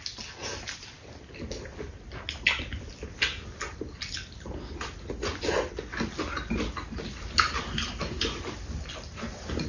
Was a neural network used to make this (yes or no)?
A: no